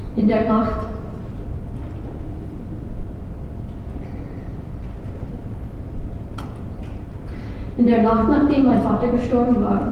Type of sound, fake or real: fake